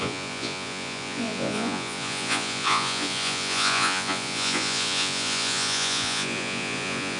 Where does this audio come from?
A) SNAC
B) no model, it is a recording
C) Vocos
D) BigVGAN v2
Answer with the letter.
C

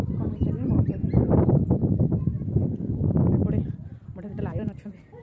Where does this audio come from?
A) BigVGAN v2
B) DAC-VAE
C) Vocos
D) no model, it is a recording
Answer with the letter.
A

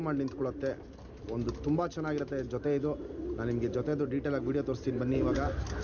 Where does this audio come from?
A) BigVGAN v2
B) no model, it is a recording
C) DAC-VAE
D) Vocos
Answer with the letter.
B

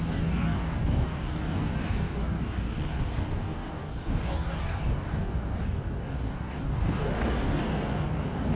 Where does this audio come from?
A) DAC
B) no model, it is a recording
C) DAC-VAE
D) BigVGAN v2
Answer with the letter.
A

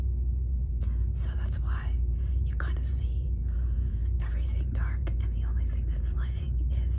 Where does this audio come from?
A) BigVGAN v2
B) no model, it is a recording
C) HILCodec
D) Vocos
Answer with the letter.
A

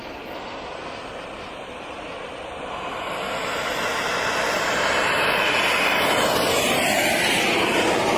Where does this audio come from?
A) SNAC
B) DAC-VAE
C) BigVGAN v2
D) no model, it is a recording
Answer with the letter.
D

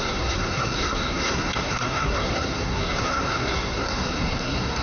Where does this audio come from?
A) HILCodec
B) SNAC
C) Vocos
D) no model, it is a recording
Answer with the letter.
B